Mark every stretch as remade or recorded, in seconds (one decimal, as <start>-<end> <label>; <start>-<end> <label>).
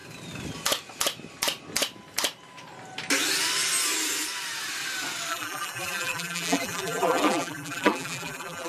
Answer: 0.0-5.3 recorded; 5.3-8.7 remade